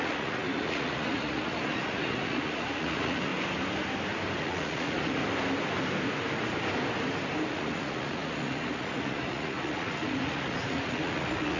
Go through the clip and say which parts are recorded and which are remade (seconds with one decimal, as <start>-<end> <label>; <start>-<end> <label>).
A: 0.0-3.3 remade; 3.3-4.4 recorded; 4.4-5.2 remade; 5.2-7.5 recorded; 7.5-11.6 remade